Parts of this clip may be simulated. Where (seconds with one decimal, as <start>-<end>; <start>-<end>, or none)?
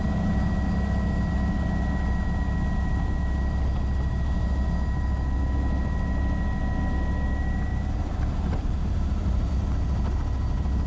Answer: 7.7-9.5